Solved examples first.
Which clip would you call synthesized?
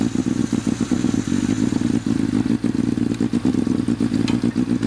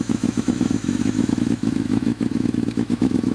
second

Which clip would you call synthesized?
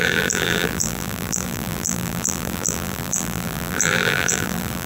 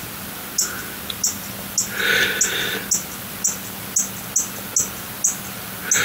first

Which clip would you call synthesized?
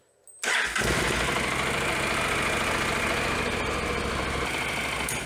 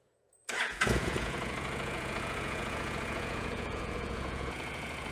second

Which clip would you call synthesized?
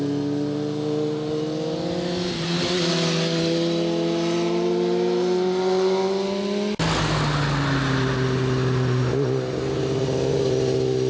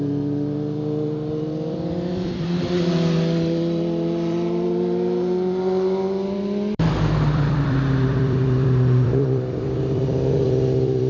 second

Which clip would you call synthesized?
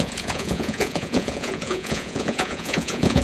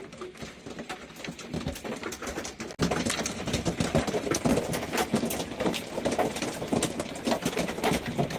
first